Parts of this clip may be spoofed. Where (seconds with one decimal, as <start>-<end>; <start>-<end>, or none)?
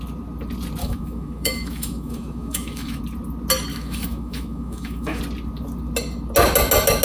0.8-3.0; 3.7-5.2